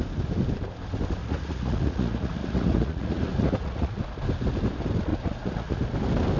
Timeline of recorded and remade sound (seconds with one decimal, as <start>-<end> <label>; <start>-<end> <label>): 0.0-1.2 recorded; 1.2-4.0 remade; 4.0-5.1 recorded; 5.1-5.8 remade; 5.8-6.4 recorded